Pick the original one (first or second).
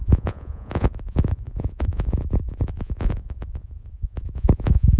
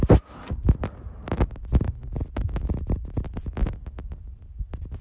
second